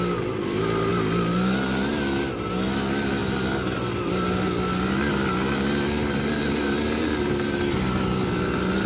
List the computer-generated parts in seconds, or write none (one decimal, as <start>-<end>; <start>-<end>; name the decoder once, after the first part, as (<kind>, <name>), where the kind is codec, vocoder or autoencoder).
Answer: none